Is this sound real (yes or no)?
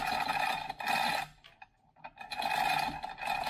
yes